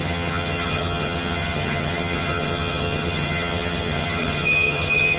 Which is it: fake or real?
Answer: fake